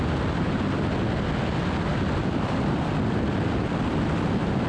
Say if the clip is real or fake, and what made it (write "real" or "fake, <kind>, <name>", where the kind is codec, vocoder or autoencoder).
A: real